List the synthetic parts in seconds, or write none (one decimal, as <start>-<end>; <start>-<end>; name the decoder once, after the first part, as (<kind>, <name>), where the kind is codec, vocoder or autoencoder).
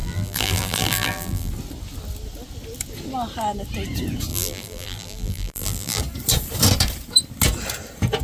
0.0-1.5 (vocoder, BigVGAN v2); 4.3-6.0